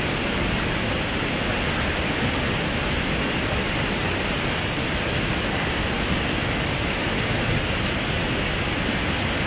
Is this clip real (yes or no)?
yes